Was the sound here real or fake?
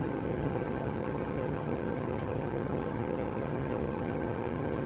fake